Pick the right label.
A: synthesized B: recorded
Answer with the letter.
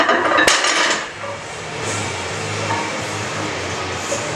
B